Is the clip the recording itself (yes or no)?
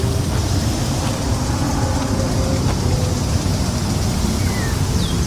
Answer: yes